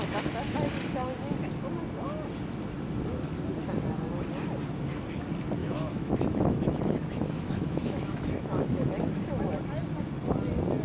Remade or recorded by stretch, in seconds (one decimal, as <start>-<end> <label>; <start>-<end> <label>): 0.0-5.6 recorded; 5.6-9.5 remade; 9.5-10.8 recorded